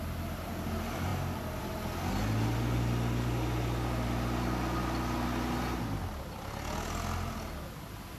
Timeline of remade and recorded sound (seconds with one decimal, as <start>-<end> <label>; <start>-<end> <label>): 0.0-8.2 recorded